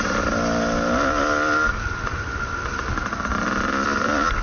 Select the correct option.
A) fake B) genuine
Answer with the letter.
B